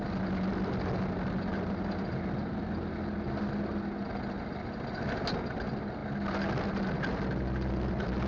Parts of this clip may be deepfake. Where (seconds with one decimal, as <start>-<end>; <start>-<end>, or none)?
none